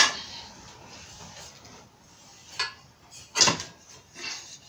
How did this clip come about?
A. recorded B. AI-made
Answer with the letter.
A